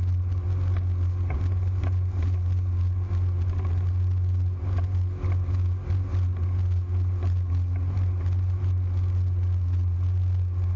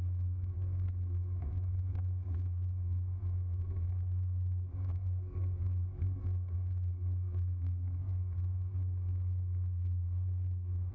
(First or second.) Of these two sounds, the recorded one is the first